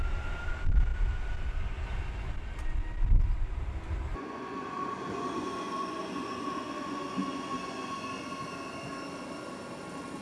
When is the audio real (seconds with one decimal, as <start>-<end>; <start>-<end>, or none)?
0.0-4.1; 8.2-10.2